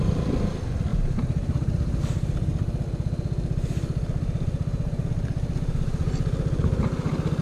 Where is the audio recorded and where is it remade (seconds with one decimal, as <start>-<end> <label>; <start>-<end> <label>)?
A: 0.0-0.9 recorded; 0.9-2.0 remade; 2.0-7.4 recorded